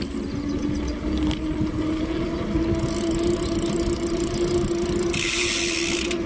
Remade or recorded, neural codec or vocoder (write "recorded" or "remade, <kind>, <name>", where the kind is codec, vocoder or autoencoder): recorded